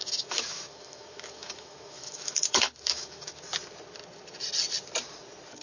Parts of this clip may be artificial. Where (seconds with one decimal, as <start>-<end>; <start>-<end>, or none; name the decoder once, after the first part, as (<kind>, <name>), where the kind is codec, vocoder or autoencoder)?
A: 0.0-3.4 (autoencoder, DAC-VAE)